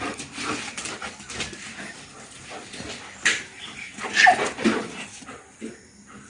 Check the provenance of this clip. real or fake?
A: real